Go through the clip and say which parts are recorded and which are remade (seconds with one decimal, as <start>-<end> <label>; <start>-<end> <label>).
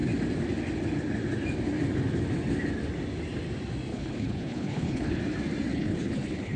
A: 0.0-3.9 recorded; 3.9-5.2 remade; 5.2-5.7 recorded; 5.7-6.6 remade